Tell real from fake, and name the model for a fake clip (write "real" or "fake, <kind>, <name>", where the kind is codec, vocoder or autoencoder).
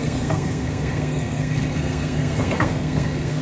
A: fake, codec, SNAC